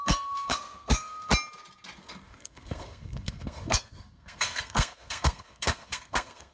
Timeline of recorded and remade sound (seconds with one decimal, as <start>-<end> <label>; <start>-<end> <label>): 0.0-1.3 remade; 1.3-2.0 recorded; 2.0-6.5 remade

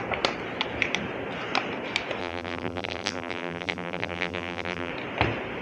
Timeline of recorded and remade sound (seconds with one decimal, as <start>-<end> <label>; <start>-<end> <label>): 0.0-2.2 recorded; 2.2-4.9 remade; 4.9-5.6 recorded

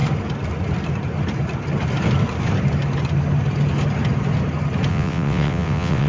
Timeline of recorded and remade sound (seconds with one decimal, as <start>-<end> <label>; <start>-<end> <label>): 0.0-4.9 recorded; 4.9-6.1 remade

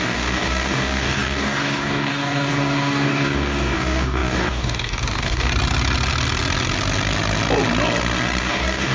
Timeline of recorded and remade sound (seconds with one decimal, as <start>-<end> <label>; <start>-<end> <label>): 0.0-5.5 remade; 5.5-8.4 recorded; 8.4-8.9 remade

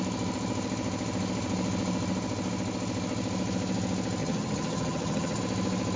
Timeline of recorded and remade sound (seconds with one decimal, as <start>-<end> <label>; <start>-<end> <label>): 0.0-4.2 recorded; 4.2-5.4 remade; 5.4-6.0 recorded

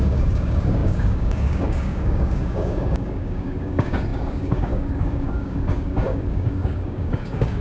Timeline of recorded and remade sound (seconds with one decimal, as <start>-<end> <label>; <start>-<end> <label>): 0.0-7.6 remade

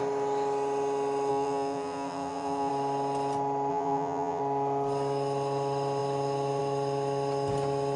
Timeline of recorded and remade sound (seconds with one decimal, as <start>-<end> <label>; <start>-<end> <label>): 0.0-1.3 recorded; 1.3-2.7 remade; 2.7-3.7 recorded; 3.7-4.4 remade; 4.4-8.0 recorded